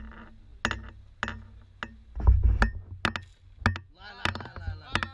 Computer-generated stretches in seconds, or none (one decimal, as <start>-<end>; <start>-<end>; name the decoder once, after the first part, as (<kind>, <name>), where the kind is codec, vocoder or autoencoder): none